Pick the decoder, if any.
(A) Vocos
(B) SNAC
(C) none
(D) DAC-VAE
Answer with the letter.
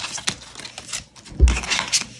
C